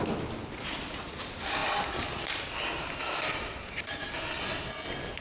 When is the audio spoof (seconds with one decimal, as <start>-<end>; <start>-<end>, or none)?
none